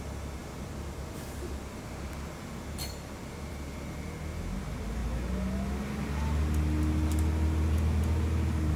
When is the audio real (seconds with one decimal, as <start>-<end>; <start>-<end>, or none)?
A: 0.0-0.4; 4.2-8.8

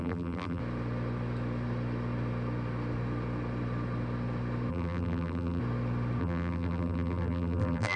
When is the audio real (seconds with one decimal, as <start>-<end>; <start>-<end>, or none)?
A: 0.6-4.7; 5.6-6.2

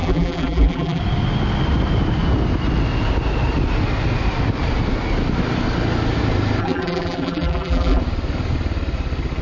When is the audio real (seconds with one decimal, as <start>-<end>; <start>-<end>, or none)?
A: 1.0-6.6; 8.0-9.4

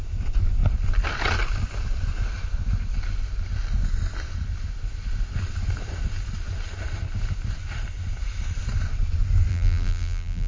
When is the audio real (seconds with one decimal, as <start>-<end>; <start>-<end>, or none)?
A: 0.0-9.5

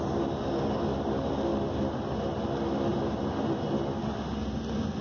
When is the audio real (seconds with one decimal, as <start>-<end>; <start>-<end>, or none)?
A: 0.0-1.5; 2.1-2.9; 3.7-5.0